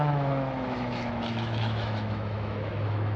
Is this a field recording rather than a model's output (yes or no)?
no